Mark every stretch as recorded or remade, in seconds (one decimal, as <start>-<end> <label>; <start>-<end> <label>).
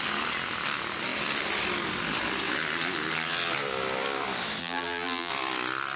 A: 0.0-4.6 recorded; 4.6-5.3 remade; 5.3-6.0 recorded